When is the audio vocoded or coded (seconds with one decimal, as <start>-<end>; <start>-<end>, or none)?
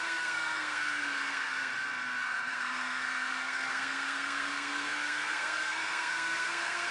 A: 0.0-1.7; 2.2-6.9